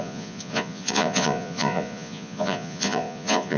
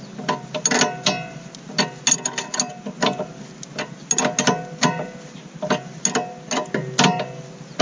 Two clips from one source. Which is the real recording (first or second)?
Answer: second